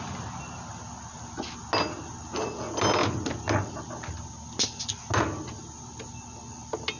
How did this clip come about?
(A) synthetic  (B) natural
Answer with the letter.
B